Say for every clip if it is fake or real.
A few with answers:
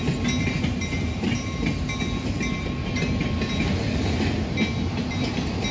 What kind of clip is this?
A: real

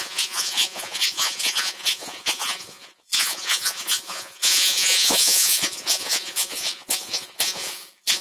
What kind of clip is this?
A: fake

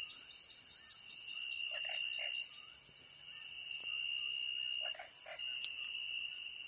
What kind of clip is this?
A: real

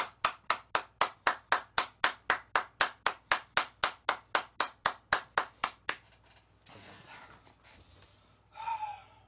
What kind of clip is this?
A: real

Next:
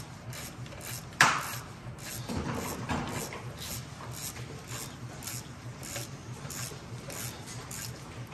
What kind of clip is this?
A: real